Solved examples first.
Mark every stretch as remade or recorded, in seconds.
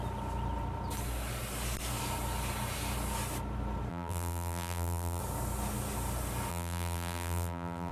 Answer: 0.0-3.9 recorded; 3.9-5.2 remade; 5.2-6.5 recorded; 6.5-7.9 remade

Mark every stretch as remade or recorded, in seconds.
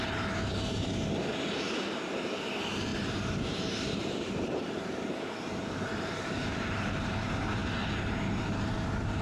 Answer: 0.0-2.9 recorded; 2.9-7.0 remade; 7.0-9.2 recorded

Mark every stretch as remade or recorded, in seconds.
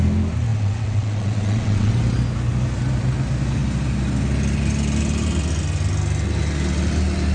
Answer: 0.0-0.5 recorded; 0.5-1.9 remade; 1.9-7.3 recorded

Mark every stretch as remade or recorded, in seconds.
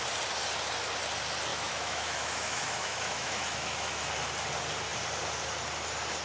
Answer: 0.0-1.5 recorded; 1.5-4.1 remade; 4.1-6.2 recorded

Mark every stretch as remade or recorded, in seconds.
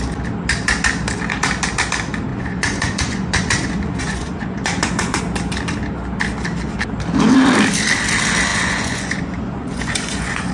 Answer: 0.0-2.3 recorded; 2.3-5.2 remade; 5.2-8.5 recorded; 8.5-10.5 remade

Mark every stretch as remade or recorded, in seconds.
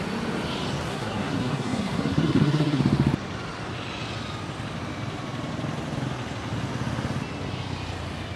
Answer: 0.0-0.9 recorded; 0.9-2.8 remade; 2.8-8.4 recorded